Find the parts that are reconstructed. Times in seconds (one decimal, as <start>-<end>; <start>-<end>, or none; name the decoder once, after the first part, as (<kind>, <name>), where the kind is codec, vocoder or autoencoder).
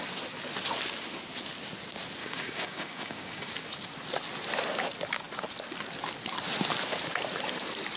2.2-3.5 (codec, DAC)